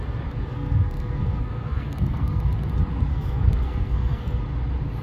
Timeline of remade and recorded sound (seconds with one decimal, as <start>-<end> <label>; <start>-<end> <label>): 0.0-0.5 recorded; 0.5-2.4 remade; 2.4-3.1 recorded; 3.1-4.4 remade; 4.4-5.0 recorded